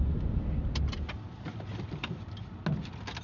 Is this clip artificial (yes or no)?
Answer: no